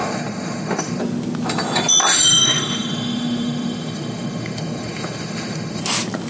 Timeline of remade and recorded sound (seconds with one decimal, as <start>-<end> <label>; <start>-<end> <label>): 0.0-1.0 remade; 1.0-2.0 recorded; 2.0-5.8 remade; 5.8-6.3 recorded